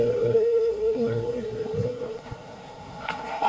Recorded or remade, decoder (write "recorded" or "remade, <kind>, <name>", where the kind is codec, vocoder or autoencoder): remade, codec, SNAC